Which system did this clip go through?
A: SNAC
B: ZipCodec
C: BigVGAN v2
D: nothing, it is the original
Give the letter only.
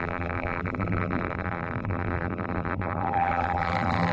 C